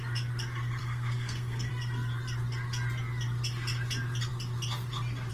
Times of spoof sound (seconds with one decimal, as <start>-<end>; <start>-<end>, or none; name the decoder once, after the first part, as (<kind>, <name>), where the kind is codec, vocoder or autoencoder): 0.8-1.7 (codec, SNAC)